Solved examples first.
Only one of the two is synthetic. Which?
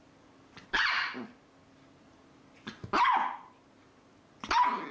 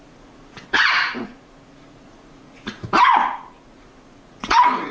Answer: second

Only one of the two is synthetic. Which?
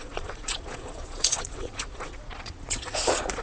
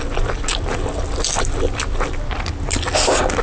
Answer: first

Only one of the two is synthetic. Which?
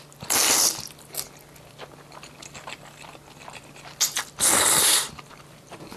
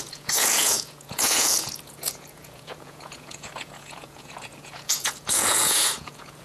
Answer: second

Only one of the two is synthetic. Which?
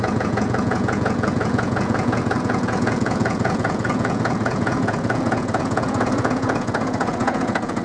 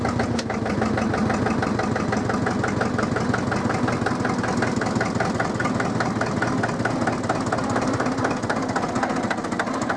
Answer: first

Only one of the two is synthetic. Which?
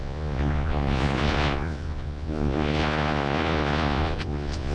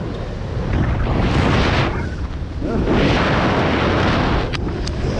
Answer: first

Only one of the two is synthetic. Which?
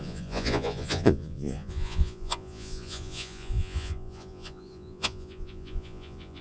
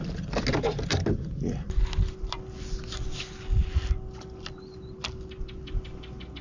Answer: first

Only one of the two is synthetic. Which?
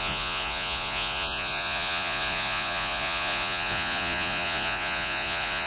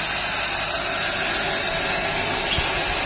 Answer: first